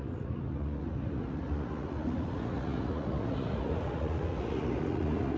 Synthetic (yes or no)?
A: yes